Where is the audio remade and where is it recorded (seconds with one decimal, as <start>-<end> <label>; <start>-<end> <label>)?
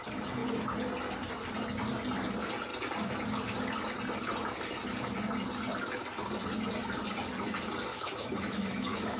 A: 0.0-7.9 recorded; 7.9-9.2 remade